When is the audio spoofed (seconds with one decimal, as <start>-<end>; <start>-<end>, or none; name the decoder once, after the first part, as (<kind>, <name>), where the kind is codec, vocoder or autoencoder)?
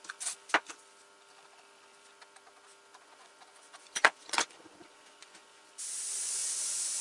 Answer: 3.0-5.7 (vocoder, Vocos); 6.4-7.0